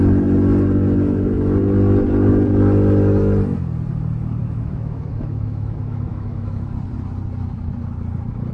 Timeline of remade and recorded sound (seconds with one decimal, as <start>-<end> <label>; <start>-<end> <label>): 0.0-4.4 recorded; 4.4-6.7 remade; 6.7-8.5 recorded